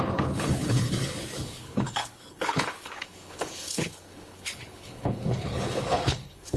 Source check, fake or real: fake